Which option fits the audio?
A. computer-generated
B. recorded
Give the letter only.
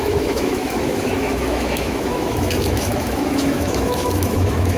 A